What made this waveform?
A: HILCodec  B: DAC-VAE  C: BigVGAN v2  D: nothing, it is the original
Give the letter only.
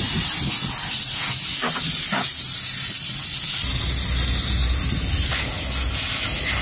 D